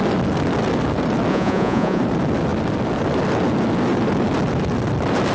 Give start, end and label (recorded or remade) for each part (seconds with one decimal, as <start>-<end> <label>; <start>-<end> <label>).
0.0-1.3 recorded; 1.3-2.0 remade; 2.0-5.3 recorded